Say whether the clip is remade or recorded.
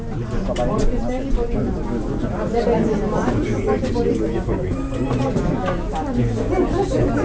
recorded